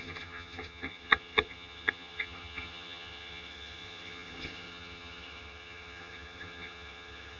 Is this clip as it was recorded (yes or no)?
no